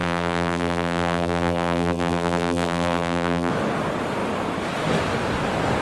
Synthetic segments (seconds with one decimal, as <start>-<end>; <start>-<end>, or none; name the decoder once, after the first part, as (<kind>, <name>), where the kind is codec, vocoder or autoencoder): 0.0-3.5 (vocoder, BigVGAN v2)